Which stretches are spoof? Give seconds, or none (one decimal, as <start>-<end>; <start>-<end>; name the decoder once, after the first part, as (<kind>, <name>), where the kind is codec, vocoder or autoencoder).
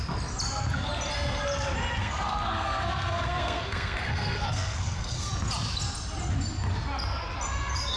2.0-5.3 (codec, SNAC)